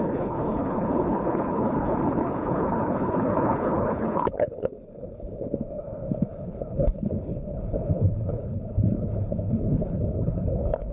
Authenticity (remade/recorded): remade